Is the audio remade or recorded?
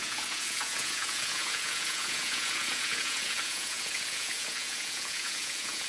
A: remade